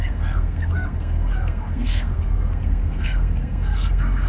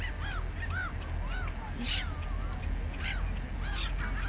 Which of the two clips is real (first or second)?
second